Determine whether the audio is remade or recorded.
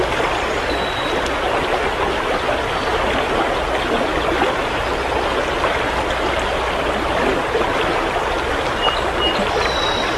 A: recorded